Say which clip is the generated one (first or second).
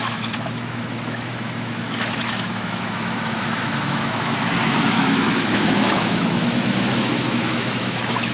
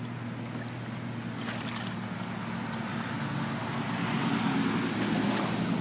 first